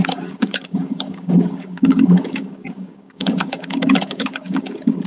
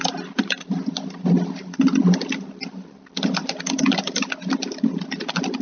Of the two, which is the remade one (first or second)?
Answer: first